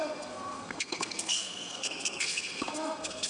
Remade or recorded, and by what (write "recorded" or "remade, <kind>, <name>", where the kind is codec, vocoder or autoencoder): remade, codec, SNAC